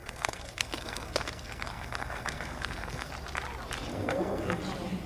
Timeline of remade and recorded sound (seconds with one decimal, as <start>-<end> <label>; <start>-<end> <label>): 0.0-3.1 remade; 3.1-3.9 recorded; 3.9-4.6 remade; 4.6-5.1 recorded